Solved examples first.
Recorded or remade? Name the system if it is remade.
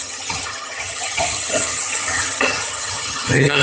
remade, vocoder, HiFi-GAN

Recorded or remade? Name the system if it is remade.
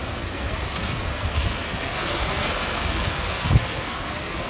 remade, codec, SNAC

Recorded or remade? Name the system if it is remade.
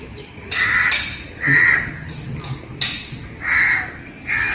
recorded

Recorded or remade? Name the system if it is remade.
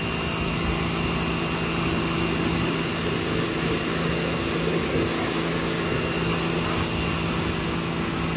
recorded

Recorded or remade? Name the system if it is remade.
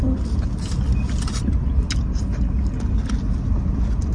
recorded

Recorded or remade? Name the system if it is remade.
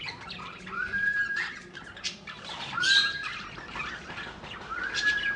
remade, vocoder, BigVGAN v2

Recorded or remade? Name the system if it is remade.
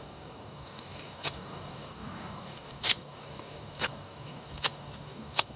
remade, codec, DAC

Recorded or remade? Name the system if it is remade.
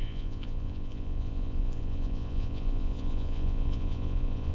remade, vocoder, Vocos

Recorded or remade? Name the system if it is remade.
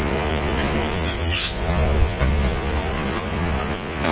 remade, vocoder, Vocos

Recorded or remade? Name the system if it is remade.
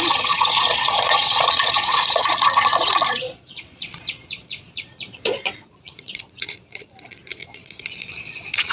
remade, vocoder, Vocos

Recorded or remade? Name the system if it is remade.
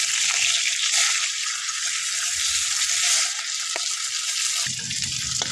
recorded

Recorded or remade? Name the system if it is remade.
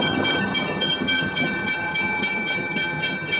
remade, vocoder, HiFi-GAN